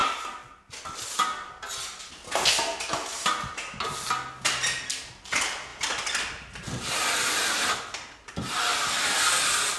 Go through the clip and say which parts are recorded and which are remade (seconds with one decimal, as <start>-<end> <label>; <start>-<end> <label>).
0.0-3.1 recorded; 3.1-4.1 remade; 4.1-9.8 recorded